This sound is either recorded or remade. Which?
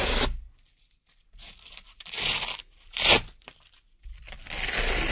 remade